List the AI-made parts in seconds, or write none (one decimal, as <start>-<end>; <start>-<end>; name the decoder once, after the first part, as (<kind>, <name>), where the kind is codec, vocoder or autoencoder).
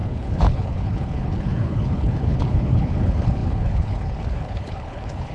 0.0-5.3 (codec, HILCodec)